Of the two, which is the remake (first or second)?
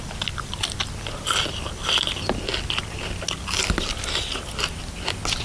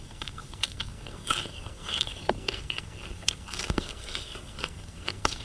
second